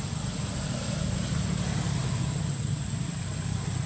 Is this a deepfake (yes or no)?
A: no